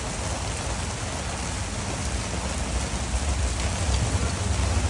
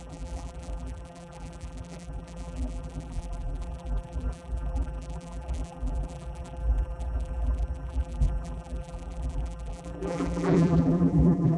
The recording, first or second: first